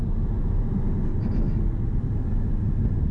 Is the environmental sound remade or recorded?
recorded